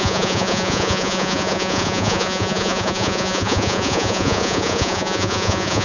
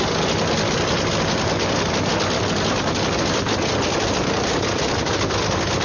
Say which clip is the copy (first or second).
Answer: first